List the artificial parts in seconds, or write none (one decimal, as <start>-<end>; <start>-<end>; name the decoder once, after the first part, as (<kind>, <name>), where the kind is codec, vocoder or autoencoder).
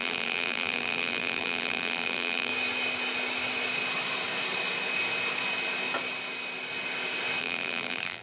0.0-2.5 (vocoder, BigVGAN v2); 7.4-8.2